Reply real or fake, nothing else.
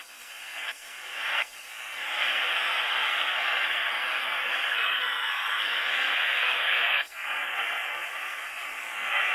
fake